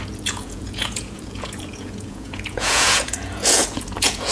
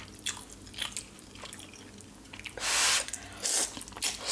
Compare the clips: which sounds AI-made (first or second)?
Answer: first